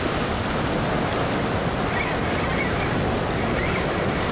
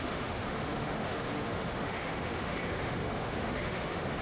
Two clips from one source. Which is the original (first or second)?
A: first